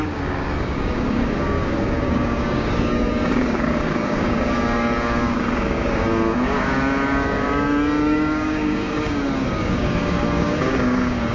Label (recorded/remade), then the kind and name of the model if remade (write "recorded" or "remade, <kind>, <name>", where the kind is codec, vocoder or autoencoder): remade, codec, DAC